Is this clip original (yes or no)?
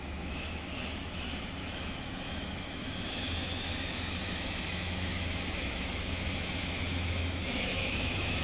no